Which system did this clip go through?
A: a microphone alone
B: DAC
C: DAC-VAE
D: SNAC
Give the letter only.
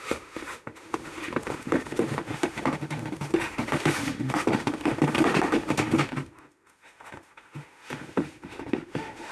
C